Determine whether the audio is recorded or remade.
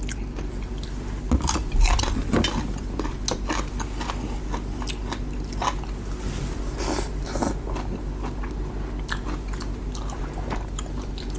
recorded